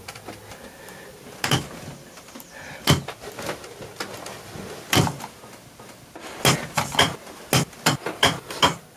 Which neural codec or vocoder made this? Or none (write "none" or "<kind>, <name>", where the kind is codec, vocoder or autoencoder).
none